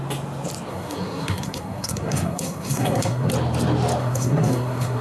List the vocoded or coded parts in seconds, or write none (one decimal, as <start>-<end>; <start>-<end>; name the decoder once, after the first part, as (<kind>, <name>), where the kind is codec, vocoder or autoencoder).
0.7-3.3 (codec, SNAC); 4.0-5.0